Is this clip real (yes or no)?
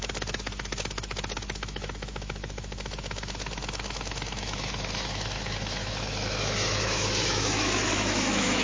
no